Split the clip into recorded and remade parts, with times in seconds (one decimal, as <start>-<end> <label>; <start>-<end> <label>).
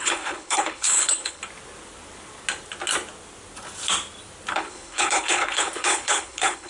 0.0-1.4 remade; 1.4-4.5 recorded; 4.5-6.7 remade